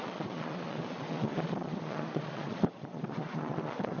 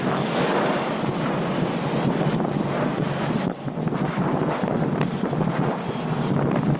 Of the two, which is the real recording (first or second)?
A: second